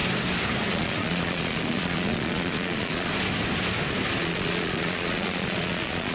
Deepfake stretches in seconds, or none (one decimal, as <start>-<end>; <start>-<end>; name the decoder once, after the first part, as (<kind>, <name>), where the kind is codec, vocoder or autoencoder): 0.7-3.1 (vocoder, Vocos); 4.2-6.1